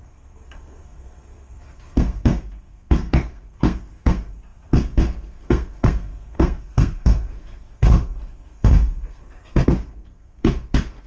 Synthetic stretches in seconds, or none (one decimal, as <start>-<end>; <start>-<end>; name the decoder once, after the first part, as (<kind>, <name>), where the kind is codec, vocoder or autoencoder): 0.0-11.1 (codec, SNAC)